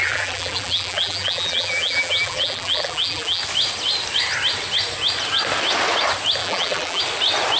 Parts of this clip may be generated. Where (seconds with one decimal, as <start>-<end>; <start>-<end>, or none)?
0.0-3.4; 6.4-7.0